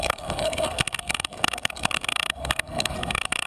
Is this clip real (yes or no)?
no